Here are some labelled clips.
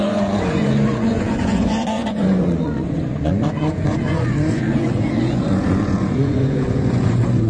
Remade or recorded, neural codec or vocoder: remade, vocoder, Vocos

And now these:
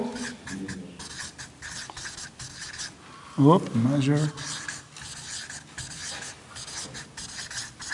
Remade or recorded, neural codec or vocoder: recorded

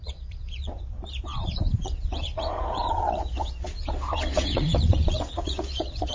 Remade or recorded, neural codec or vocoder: remade, vocoder, Vocos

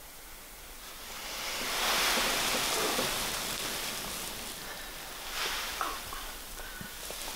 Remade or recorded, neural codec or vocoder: recorded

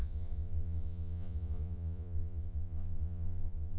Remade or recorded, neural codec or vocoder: remade, vocoder, Vocos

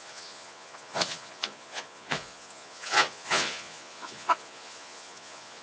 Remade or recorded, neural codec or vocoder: remade, vocoder, Vocos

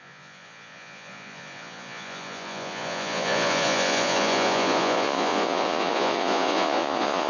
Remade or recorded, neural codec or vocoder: remade, vocoder, Vocos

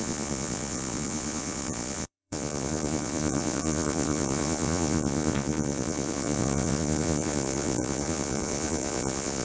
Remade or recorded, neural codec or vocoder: remade, vocoder, Vocos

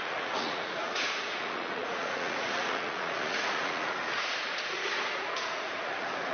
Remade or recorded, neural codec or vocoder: remade, vocoder, Vocos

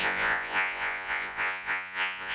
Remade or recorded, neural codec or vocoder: remade, vocoder, Vocos